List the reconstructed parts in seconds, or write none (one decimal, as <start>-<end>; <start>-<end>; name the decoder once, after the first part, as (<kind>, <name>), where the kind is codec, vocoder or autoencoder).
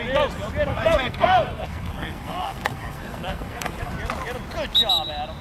0.7-3.9 (codec, SNAC)